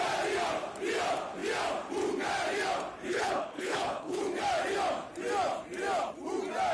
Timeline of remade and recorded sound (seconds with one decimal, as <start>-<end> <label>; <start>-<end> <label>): 0.0-3.1 recorded; 3.1-4.2 remade; 4.2-6.7 recorded